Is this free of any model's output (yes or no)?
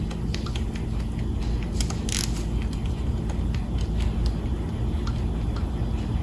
yes